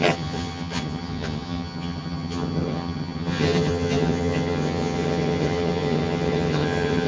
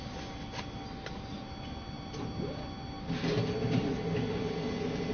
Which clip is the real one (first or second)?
second